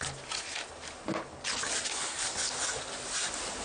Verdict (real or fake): real